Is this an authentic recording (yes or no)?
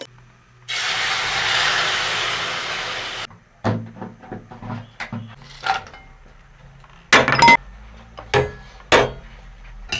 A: yes